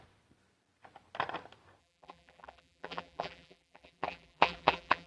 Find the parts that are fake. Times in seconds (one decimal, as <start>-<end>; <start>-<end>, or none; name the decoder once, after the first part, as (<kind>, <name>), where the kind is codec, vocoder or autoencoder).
1.8-5.1 (vocoder, BigVGAN v2)